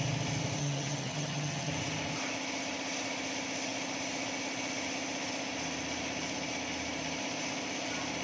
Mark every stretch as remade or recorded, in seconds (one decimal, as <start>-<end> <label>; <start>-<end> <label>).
0.0-0.6 recorded; 0.6-1.7 remade; 1.7-8.2 recorded